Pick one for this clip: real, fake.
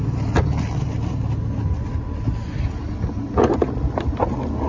real